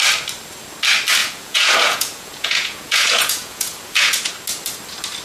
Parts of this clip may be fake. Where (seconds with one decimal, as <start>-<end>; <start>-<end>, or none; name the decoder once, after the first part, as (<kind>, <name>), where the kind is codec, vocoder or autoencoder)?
1.2-4.3 (vocoder, Vocos)